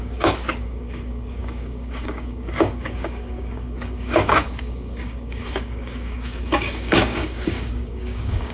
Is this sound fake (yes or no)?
yes